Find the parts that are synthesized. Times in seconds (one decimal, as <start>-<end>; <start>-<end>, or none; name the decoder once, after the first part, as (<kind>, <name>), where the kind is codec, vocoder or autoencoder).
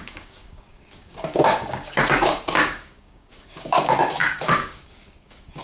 0.0-5.6 (codec, DAC)